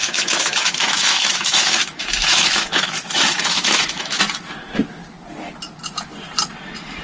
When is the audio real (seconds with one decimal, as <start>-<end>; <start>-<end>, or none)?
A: 4.2-7.0